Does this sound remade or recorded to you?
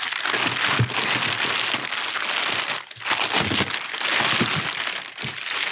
recorded